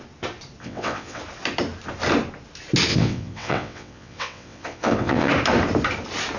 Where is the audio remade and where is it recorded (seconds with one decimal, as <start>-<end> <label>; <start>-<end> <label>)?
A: 0.0-0.6 recorded; 0.6-1.2 remade; 1.2-2.9 recorded; 2.9-5.3 remade; 5.3-6.4 recorded